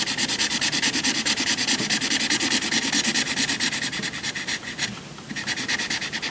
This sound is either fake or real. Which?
real